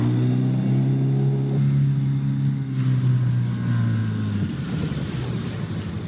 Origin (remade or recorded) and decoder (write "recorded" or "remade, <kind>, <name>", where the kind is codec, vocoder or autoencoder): recorded